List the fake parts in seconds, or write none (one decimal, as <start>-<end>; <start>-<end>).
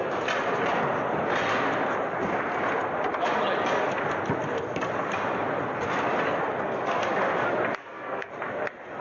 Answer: 7.8-8.3